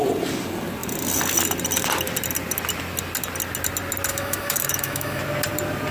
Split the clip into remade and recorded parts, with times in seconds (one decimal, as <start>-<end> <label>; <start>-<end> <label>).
0.0-4.1 recorded; 4.1-5.2 remade; 5.2-5.9 recorded